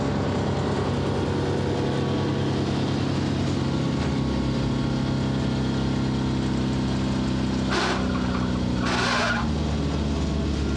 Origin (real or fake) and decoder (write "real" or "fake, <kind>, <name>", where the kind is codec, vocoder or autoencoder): real